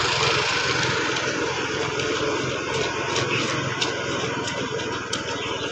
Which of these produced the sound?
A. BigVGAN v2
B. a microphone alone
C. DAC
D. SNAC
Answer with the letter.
B